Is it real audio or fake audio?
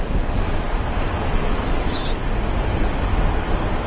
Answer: real